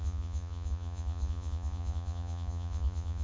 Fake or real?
fake